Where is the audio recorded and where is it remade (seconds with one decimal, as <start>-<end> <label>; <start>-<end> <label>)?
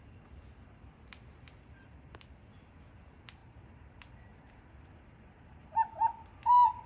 0.0-3.4 recorded; 3.4-6.4 remade; 6.4-6.9 recorded